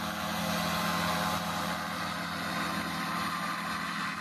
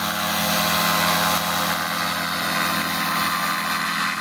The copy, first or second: first